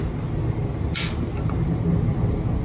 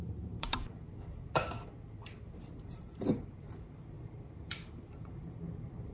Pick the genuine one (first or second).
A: first